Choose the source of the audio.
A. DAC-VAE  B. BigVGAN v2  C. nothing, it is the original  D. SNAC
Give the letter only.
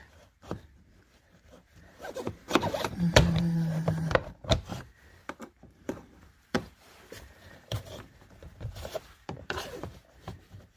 B